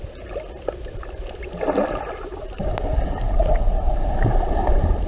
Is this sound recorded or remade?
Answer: recorded